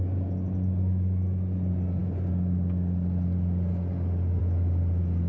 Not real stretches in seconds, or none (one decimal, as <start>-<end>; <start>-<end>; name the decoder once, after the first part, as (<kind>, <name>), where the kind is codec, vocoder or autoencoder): none